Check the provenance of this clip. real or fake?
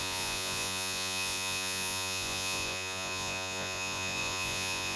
fake